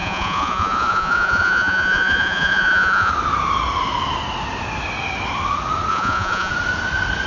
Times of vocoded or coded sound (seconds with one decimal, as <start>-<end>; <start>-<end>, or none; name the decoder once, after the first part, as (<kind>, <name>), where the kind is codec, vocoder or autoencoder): 0.0-3.1 (vocoder, Vocos); 5.9-6.5